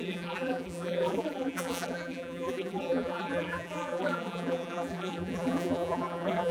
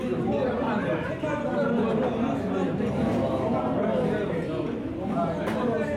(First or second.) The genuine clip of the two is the second